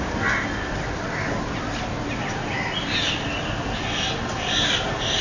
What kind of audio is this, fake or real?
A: real